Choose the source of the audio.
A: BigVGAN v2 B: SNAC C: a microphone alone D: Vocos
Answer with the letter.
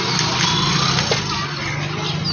C